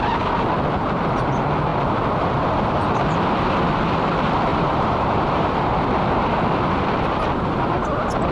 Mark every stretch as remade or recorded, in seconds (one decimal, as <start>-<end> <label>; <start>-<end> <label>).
0.0-4.5 recorded; 4.5-5.6 remade; 5.6-8.3 recorded